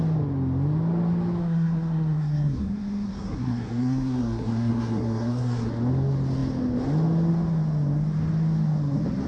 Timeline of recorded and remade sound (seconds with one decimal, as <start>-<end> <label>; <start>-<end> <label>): 0.0-1.4 recorded; 1.4-5.7 remade; 5.7-9.3 recorded